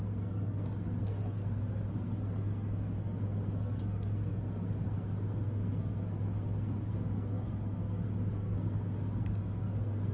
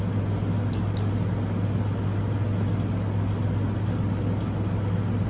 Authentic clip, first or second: second